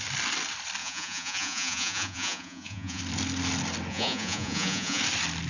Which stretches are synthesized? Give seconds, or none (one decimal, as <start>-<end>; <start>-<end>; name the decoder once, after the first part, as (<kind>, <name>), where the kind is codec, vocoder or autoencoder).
0.8-3.0 (vocoder, Vocos); 3.9-5.0